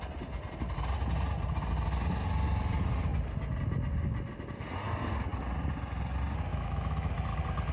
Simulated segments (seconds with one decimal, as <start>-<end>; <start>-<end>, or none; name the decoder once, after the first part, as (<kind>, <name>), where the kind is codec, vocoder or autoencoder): 6.5-7.1 (autoencoder, DAC-VAE)